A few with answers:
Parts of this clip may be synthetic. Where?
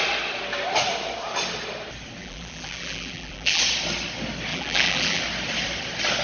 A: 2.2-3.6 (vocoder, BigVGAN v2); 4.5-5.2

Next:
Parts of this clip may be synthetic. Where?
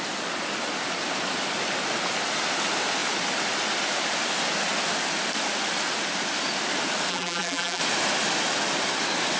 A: 7.1-7.8 (vocoder, BigVGAN v2)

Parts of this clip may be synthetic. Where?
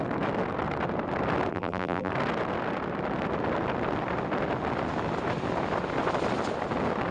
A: 1.5-2.1 (vocoder, BigVGAN v2)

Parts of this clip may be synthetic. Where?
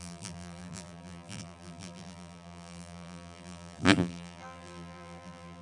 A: 0.0-5.6 (vocoder, BigVGAN v2)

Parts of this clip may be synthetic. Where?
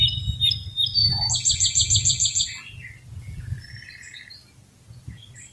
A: 1.0-2.6 (vocoder, BigVGAN v2); 3.2-3.7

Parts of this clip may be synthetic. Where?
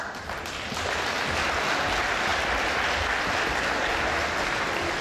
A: none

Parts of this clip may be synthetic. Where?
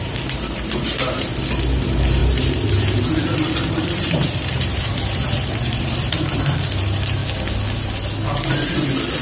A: 0.0-1.3 (vocoder, BigVGAN v2); 1.8-7.2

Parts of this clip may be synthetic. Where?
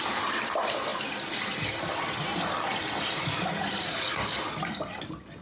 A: 2.3-4.4 (vocoder, BigVGAN v2)